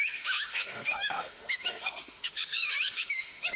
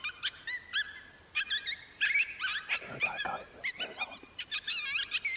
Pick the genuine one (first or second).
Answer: second